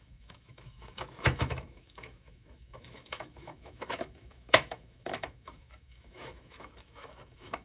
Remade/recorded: remade